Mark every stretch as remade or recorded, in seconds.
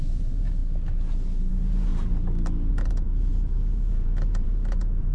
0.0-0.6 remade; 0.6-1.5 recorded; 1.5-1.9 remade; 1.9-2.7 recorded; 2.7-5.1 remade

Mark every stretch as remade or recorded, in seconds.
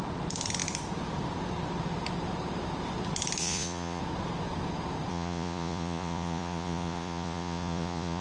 0.0-3.4 recorded; 3.4-4.0 remade; 4.0-5.1 recorded; 5.1-8.2 remade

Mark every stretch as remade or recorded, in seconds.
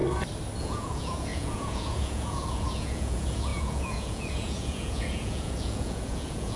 0.0-0.6 recorded; 0.6-6.6 remade